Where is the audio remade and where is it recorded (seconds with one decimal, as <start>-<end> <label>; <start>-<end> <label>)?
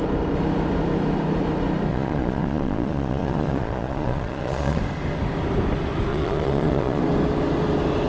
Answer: 0.0-1.9 recorded; 1.9-4.8 remade; 4.8-6.1 recorded; 6.1-7.0 remade; 7.0-8.1 recorded